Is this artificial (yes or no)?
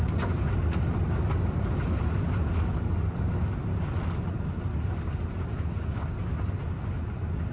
no